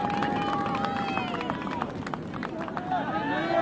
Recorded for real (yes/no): yes